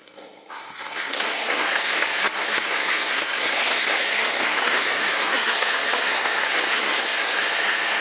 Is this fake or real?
fake